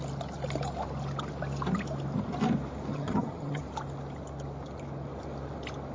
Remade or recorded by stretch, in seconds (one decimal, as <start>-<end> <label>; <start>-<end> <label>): 0.0-2.9 recorded; 2.9-3.6 remade; 3.6-5.9 recorded

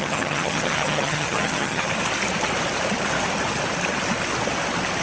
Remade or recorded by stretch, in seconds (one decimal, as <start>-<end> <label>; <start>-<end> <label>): 0.0-1.9 remade; 1.9-5.0 recorded

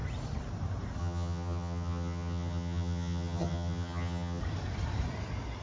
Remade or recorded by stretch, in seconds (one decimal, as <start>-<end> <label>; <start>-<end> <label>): 0.0-1.0 recorded; 1.0-4.4 remade; 4.4-5.6 recorded

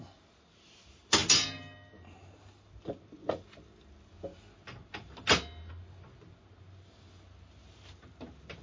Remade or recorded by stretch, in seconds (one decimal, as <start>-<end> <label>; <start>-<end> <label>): 0.0-8.6 recorded

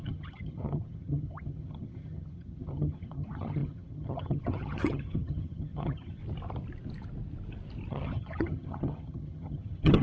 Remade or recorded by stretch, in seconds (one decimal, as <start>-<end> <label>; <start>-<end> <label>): 0.0-6.2 remade; 6.2-7.9 recorded; 7.9-10.0 remade